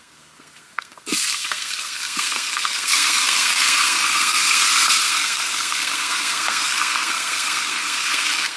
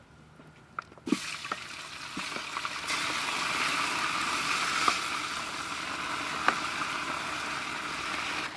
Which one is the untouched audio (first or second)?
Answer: second